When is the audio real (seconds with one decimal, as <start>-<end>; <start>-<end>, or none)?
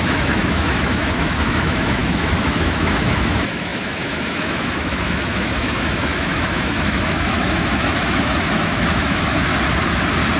9.5-10.4